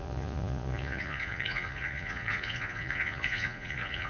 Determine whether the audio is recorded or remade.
remade